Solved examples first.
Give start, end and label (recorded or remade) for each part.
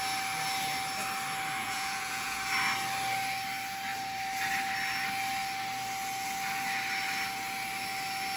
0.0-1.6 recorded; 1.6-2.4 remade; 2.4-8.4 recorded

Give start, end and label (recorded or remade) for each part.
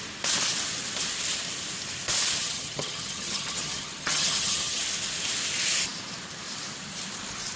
0.0-2.4 recorded; 2.4-4.8 remade; 4.8-7.6 recorded